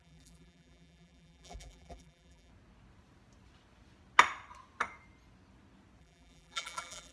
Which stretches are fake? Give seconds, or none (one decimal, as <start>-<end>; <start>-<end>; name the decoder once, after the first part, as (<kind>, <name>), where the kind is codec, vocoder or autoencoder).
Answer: 0.0-2.5 (vocoder, BigVGAN v2); 6.0-7.1